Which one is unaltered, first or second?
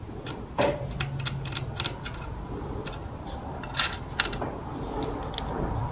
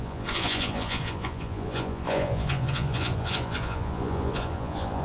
first